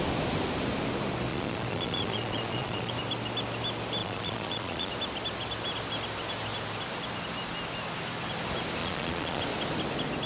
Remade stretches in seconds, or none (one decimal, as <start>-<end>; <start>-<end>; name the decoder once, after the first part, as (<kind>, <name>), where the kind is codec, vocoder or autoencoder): 1.3-2.9 (vocoder, Vocos); 4.0-4.9; 8.8-9.4